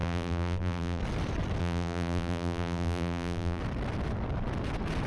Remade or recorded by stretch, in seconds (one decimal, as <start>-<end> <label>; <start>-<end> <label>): 0.0-1.0 remade; 1.0-1.6 recorded; 1.6-3.6 remade; 3.6-5.1 recorded